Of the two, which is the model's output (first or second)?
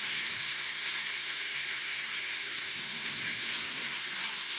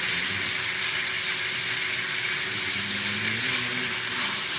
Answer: first